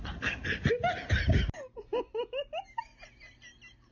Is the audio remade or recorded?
recorded